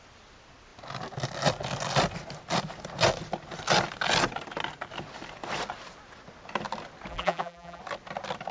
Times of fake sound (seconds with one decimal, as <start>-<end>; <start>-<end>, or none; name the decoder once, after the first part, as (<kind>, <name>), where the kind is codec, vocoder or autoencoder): 7.1-7.8 (vocoder, BigVGAN v2)